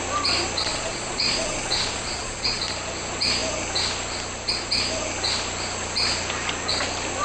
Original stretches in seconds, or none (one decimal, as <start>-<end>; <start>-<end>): 0.0-0.7; 2.6-7.2